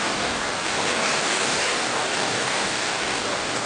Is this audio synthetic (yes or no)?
yes